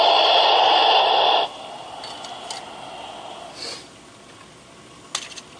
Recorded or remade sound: recorded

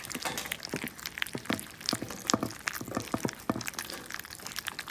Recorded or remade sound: recorded